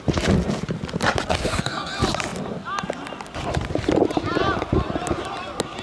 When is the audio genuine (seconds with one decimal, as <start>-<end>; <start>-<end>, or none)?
0.0-1.3; 1.9-5.8